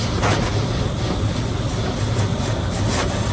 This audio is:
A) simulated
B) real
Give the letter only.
B